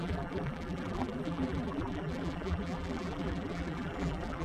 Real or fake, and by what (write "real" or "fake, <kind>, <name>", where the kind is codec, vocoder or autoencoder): fake, vocoder, BigVGAN v2